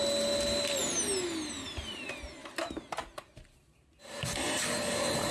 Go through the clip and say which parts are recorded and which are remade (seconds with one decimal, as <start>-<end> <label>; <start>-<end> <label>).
0.0-5.3 recorded